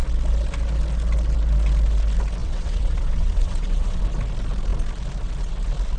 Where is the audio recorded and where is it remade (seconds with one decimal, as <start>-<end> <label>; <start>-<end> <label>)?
0.0-2.4 recorded; 2.4-4.0 remade; 4.0-6.0 recorded